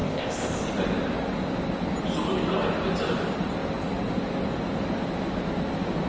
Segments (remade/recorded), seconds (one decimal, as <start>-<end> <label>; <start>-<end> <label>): 0.0-0.6 remade; 0.6-6.1 recorded